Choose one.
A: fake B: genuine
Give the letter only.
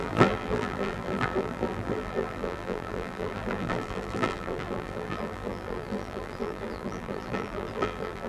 A